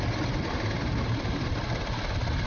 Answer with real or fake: real